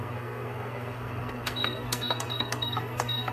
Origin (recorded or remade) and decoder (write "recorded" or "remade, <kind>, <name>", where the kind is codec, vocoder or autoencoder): remade, codec, SNAC